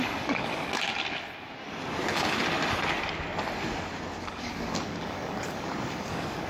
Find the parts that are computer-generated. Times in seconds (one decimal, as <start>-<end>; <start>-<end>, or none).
0.0-0.9; 4.2-6.5